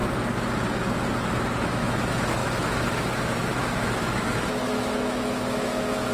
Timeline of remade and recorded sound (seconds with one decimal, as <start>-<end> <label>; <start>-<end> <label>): 0.0-1.6 recorded; 1.6-6.1 remade